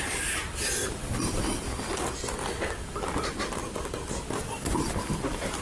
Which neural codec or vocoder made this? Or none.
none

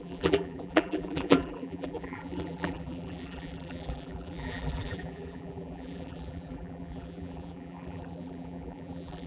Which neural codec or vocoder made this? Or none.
vocoder, BigVGAN v2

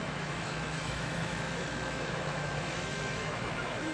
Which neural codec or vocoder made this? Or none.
autoencoder, DAC-VAE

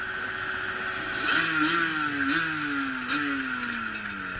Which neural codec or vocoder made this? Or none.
none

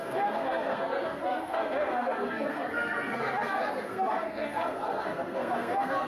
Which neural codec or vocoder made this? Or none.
codec, SNAC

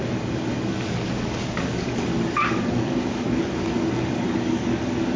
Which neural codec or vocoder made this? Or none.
codec, DAC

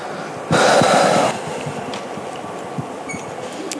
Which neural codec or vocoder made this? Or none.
none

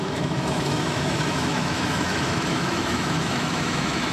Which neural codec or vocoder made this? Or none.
autoencoder, DAC-VAE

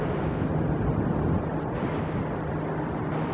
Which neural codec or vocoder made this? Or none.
none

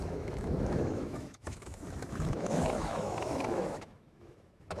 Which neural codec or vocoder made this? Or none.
autoencoder, DAC-VAE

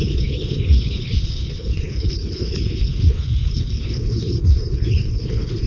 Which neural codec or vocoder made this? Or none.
codec, HILCodec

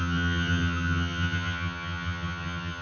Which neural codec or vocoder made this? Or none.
vocoder, HiFi-GAN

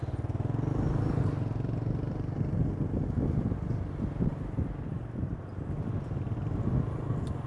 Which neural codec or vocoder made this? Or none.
none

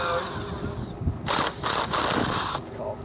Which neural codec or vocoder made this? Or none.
none